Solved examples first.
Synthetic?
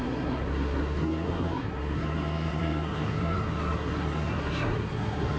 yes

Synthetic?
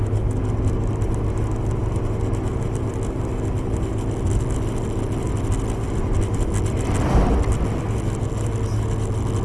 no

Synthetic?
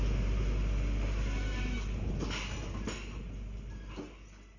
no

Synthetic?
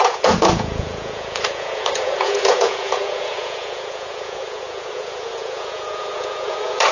yes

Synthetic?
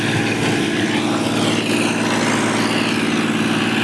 no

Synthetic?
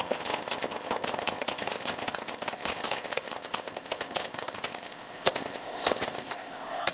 yes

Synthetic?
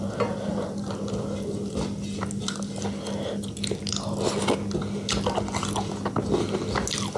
no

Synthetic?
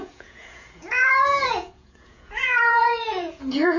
yes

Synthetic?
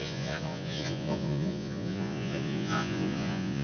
yes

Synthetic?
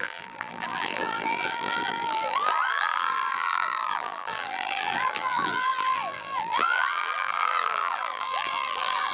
yes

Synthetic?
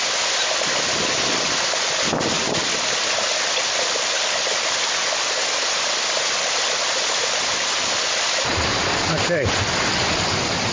no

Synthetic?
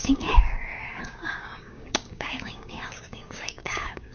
yes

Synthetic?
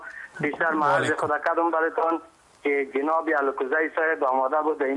no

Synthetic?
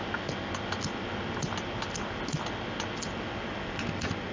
no